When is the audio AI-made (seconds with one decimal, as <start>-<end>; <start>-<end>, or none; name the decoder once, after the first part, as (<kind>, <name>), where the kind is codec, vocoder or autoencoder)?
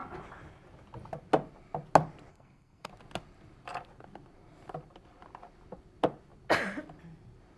2.3-2.9 (codec, SNAC)